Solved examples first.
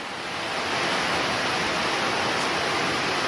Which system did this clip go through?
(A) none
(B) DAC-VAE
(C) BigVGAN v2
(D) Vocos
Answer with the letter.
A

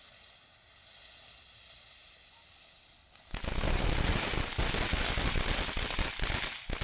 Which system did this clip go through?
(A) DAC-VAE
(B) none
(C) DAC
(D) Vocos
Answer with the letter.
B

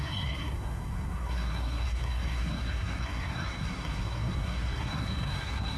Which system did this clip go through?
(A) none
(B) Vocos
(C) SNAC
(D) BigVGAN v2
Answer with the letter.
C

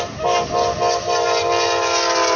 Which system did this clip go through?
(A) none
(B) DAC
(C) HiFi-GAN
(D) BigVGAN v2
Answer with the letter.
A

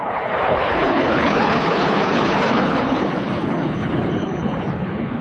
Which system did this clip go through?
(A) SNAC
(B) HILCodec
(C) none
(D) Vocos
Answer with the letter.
B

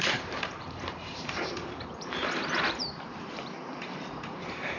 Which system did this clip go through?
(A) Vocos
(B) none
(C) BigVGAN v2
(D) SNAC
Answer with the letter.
C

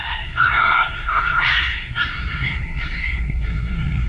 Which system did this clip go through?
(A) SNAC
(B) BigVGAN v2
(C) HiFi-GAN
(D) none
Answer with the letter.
A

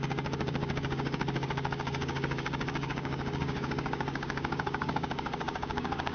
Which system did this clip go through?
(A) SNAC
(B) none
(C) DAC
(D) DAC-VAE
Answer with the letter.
C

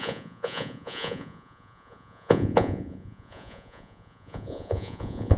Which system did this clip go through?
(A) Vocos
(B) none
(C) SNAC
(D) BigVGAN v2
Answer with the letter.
A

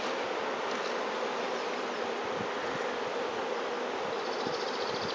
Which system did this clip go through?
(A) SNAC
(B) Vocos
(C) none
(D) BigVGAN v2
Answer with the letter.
C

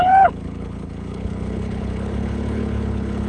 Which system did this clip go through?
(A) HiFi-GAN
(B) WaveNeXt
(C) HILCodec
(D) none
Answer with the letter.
C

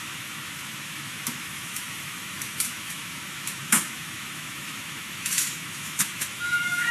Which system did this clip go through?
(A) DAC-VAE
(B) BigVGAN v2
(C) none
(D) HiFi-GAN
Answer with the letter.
A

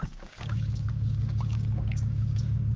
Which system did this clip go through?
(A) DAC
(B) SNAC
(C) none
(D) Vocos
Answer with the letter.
A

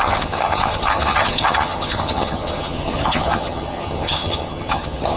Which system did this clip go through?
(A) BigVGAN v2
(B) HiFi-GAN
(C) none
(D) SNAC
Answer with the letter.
B